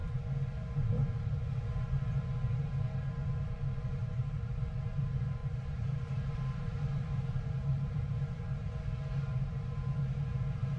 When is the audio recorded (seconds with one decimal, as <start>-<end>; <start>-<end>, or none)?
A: 0.0-4.0; 4.5-5.4; 8.4-10.8